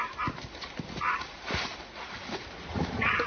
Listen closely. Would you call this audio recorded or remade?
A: recorded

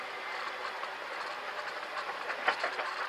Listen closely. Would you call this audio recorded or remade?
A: recorded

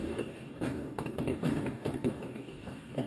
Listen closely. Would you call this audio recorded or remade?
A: remade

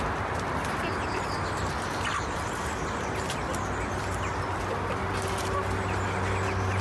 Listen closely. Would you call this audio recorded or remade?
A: recorded